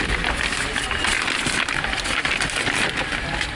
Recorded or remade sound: recorded